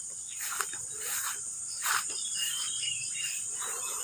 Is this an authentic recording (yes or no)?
no